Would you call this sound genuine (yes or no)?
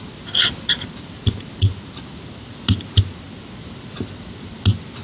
yes